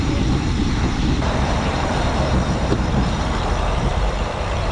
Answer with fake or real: fake